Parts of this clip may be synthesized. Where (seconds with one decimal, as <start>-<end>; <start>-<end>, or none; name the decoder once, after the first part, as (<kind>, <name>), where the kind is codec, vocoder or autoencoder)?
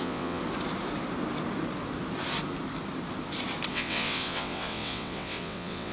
0.0-0.4 (vocoder, WaveNeXt); 3.7-5.9